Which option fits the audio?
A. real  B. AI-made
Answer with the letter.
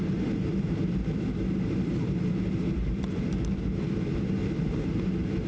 B